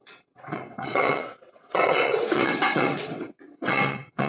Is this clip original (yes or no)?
no